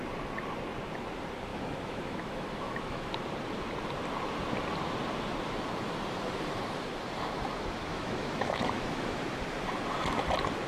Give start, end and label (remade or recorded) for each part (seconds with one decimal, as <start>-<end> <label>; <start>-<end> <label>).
0.0-1.5 recorded; 1.5-3.1 remade; 3.1-7.9 recorded; 7.9-9.2 remade; 9.2-10.7 recorded

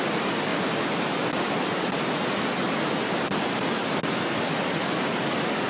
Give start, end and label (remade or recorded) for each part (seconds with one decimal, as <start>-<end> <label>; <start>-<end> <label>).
0.0-5.7 recorded